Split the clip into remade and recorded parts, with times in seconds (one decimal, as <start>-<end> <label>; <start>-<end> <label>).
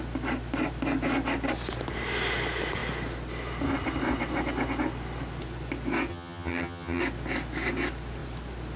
0.0-6.1 recorded; 6.1-7.0 remade; 7.0-8.8 recorded